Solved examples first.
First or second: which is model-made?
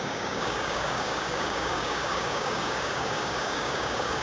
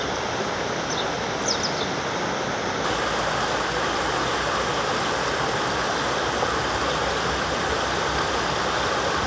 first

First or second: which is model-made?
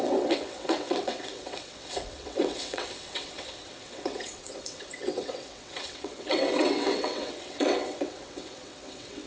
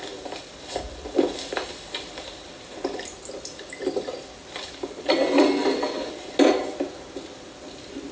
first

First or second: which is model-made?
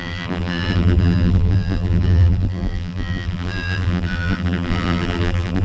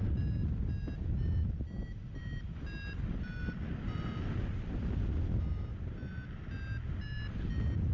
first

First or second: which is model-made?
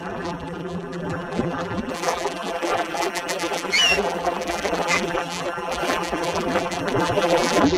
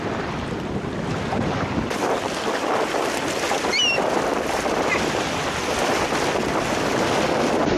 first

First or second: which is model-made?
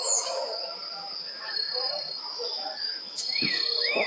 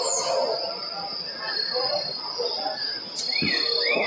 first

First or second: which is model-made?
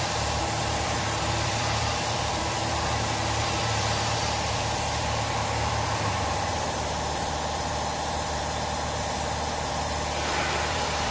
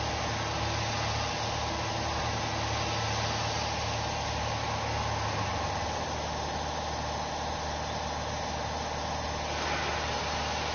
first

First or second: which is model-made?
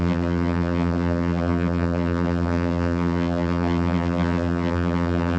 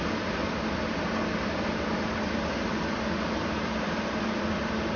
first